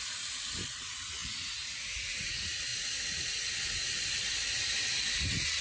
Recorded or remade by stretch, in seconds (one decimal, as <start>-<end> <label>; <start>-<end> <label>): 0.0-4.4 remade; 4.4-5.6 recorded